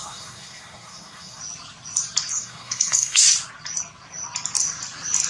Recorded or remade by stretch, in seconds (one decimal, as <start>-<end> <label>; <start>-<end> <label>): 0.0-1.4 remade; 1.4-2.3 recorded; 2.3-3.2 remade; 3.2-5.3 recorded